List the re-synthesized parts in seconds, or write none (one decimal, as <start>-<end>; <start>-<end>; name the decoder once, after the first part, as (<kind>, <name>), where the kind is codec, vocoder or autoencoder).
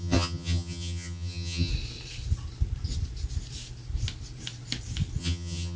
0.0-1.7 (vocoder, HiFi-GAN); 5.2-5.8